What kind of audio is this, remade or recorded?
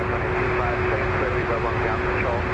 recorded